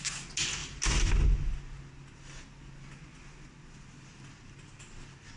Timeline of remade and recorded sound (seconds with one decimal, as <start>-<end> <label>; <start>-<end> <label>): 0.0-5.4 recorded

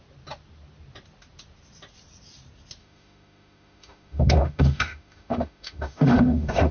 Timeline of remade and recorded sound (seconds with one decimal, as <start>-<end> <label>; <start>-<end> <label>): 0.0-2.8 recorded; 2.8-6.7 remade

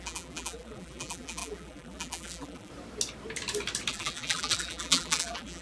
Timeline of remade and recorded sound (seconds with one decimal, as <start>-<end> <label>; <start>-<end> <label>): 0.0-2.7 remade; 2.7-3.9 recorded; 3.9-5.6 remade

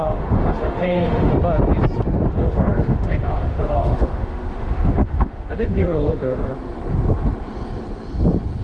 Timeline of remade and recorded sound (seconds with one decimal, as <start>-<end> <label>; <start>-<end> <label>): 0.0-1.3 remade; 1.3-2.3 recorded; 2.3-6.5 remade; 6.5-8.6 recorded

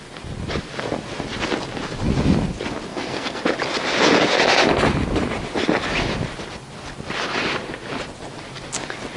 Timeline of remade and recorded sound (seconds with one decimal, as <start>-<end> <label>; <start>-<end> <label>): 0.0-2.9 recorded; 2.9-3.4 remade; 3.4-9.2 recorded

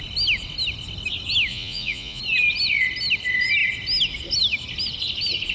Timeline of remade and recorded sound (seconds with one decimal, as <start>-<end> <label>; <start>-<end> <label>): 0.0-1.5 recorded; 1.5-2.2 remade; 2.2-5.5 recorded

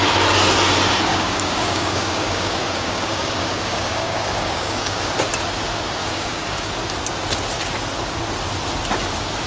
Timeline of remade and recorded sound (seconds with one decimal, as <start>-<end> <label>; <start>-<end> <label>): 0.0-1.1 recorded; 1.1-5.1 remade; 5.1-6.0 recorded; 6.0-6.7 remade; 6.7-9.5 recorded

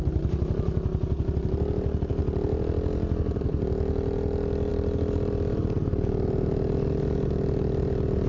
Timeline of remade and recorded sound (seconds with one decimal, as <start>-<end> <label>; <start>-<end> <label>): 0.0-8.3 recorded